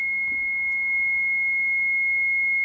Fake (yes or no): no